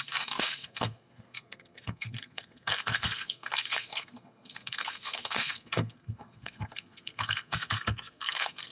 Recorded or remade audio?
remade